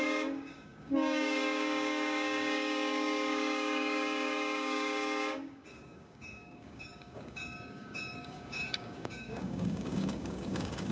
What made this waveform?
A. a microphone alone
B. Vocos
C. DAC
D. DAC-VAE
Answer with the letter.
C